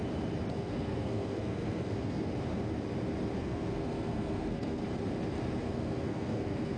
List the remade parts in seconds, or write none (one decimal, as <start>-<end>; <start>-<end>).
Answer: 0.5-2.3; 3.4-4.8; 5.6-6.8